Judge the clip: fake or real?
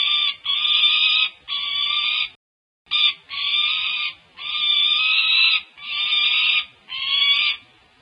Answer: real